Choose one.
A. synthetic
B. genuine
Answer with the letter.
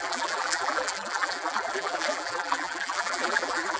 A